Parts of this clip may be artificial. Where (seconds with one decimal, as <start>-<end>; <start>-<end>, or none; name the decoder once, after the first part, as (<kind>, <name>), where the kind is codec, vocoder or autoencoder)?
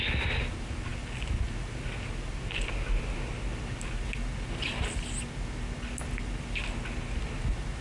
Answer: none